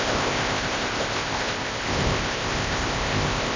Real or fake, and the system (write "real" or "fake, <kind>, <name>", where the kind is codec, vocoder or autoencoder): fake, codec, ZipCodec